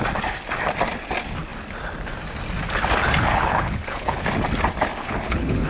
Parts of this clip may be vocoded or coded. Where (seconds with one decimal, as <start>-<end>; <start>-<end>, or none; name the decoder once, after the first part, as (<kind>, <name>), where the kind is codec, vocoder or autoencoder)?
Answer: 3.3-4.2 (codec, HILCodec); 5.0-5.7